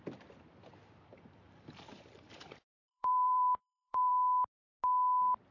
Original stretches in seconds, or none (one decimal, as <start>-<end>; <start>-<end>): 0.0-1.1; 4.1-5.5